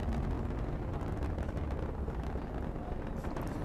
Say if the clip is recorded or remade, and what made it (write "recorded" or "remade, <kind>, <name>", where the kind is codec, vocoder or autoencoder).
recorded